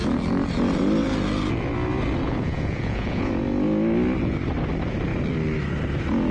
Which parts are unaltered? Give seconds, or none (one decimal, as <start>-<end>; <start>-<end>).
0.0-2.2; 3.3-6.3